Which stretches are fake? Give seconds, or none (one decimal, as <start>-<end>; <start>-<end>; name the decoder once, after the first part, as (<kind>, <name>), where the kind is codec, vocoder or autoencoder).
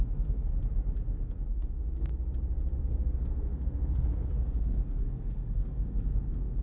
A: 0.0-0.5 (codec, SNAC); 1.5-2.1; 2.8-6.6